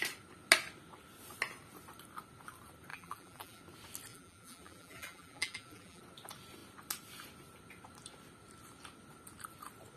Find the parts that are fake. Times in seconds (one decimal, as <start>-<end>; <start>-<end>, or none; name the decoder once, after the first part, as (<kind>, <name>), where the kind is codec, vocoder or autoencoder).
2.9-3.6 (vocoder, BigVGAN v2); 4.1-6.0